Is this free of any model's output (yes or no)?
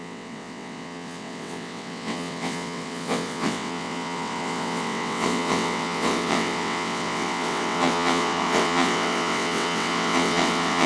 no